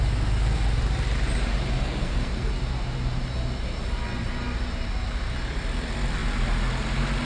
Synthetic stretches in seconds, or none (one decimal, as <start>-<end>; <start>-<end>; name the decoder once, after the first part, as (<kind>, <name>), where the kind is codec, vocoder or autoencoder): 1.8-2.5 (codec, SNAC)